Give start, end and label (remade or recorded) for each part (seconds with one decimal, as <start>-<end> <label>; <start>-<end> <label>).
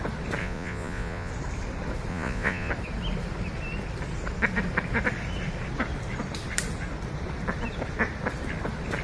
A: 0.0-0.4 recorded; 0.4-1.3 remade; 1.3-2.1 recorded; 2.1-2.7 remade; 2.7-9.0 recorded